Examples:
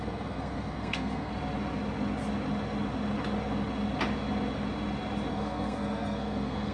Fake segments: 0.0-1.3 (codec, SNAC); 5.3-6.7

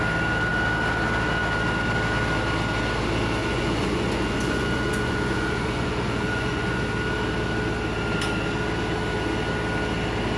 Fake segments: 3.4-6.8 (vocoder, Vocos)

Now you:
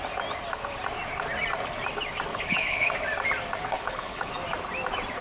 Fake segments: 2.3-2.9 (codec, HILCodec); 3.7-4.3

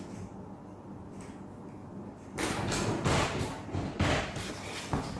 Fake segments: 1.8-4.5 (vocoder, BigVGAN v2)

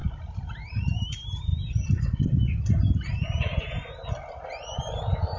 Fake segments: 0.7-1.5 (vocoder, BigVGAN v2); 4.1-5.4